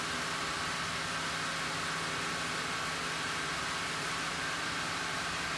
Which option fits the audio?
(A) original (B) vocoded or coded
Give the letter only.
A